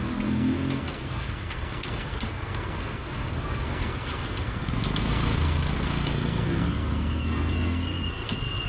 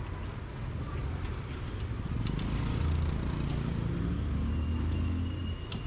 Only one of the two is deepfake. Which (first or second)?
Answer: first